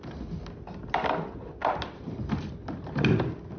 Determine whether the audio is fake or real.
real